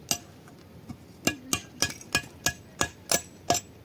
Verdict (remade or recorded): recorded